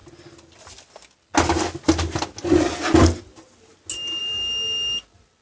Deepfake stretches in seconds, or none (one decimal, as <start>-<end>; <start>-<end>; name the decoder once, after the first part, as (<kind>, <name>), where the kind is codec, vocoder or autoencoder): none